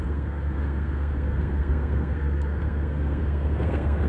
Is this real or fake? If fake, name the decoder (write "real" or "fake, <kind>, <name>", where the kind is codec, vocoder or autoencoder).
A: fake, codec, SNAC